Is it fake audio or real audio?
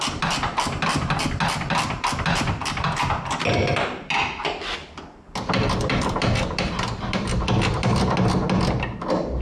real